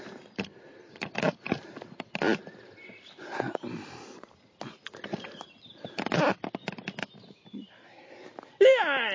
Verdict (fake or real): real